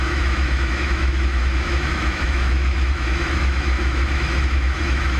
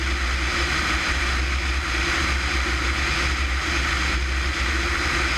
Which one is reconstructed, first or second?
first